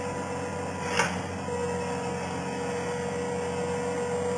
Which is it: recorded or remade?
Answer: recorded